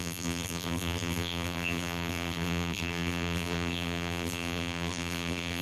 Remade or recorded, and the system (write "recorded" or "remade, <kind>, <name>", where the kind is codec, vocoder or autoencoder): remade, vocoder, BigVGAN v2